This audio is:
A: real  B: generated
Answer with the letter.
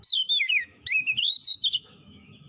B